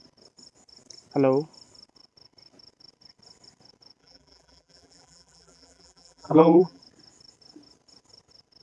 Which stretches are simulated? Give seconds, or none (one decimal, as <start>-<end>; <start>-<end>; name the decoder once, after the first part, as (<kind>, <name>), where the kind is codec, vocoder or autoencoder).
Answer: 4.0-6.8 (vocoder, BigVGAN v2)